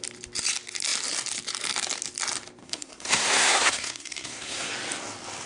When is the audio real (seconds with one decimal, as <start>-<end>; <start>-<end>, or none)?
0.0-2.6; 4.7-5.5